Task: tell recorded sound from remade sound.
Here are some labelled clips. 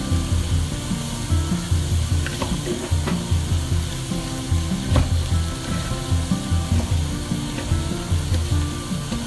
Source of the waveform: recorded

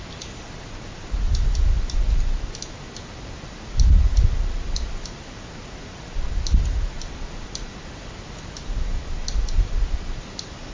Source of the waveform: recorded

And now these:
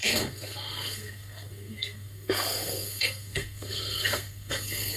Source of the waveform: remade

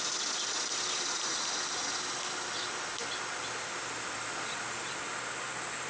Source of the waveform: recorded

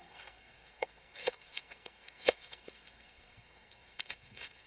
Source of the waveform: remade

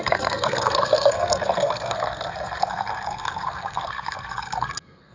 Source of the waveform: remade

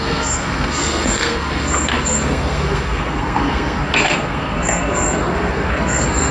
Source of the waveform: remade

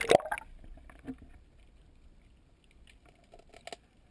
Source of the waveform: recorded